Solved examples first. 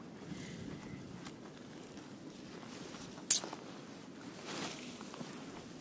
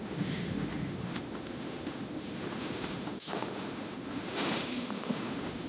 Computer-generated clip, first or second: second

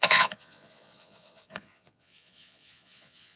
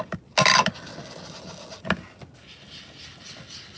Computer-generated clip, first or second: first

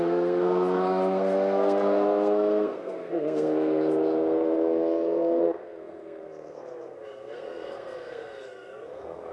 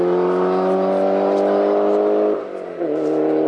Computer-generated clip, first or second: first